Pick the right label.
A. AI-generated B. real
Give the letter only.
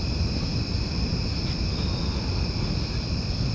B